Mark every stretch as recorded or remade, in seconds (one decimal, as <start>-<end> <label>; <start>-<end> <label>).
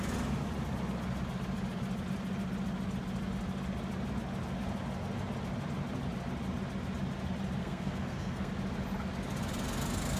0.0-7.6 recorded; 7.6-8.5 remade; 8.5-10.2 recorded